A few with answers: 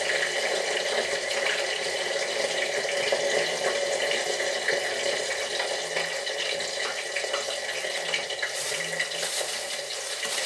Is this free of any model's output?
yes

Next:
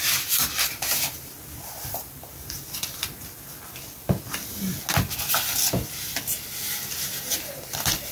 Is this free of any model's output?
yes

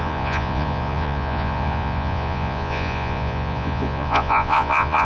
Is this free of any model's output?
no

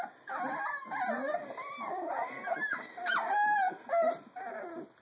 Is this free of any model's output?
yes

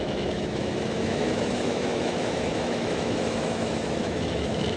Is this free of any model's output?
no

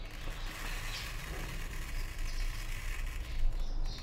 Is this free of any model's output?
yes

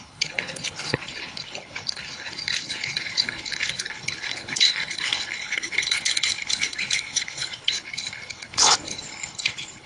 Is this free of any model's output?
no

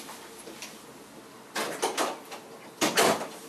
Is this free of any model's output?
yes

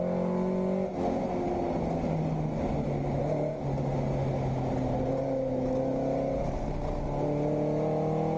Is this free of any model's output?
yes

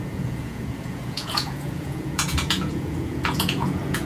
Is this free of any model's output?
no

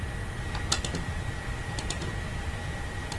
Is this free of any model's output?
yes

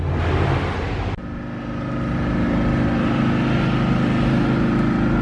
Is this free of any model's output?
yes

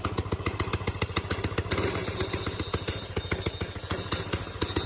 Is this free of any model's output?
yes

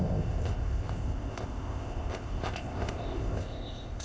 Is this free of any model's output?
no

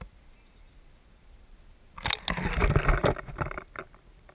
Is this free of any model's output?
yes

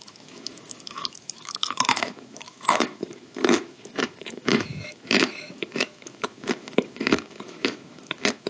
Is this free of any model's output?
no